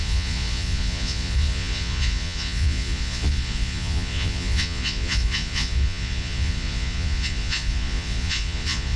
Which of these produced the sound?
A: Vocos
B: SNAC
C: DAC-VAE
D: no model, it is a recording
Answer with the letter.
A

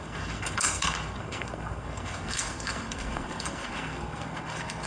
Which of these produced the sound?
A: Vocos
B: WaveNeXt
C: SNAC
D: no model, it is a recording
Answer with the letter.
C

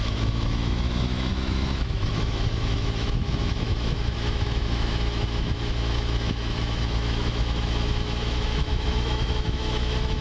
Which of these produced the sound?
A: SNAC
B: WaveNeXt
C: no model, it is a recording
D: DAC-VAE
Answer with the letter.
D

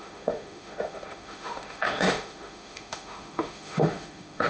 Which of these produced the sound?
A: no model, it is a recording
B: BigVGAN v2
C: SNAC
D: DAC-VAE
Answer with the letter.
D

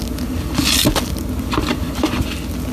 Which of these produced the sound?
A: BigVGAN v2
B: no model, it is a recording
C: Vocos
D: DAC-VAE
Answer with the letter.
B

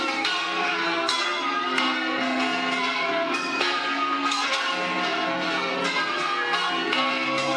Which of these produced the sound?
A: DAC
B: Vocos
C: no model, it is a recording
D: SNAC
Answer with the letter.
D